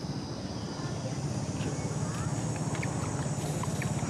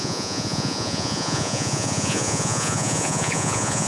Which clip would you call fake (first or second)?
second